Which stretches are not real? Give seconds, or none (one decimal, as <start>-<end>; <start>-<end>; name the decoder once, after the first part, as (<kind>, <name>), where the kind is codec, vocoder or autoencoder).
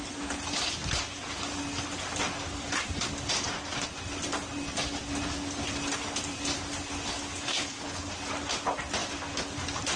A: 7.5-8.1 (codec, HILCodec)